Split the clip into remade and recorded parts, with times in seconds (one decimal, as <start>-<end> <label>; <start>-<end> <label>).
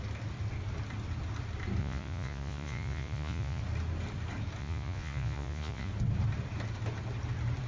0.0-1.8 recorded; 1.8-3.6 remade; 3.6-4.6 recorded; 4.6-5.9 remade; 5.9-7.7 recorded